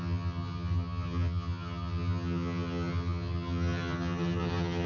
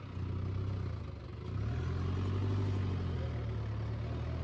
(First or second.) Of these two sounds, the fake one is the first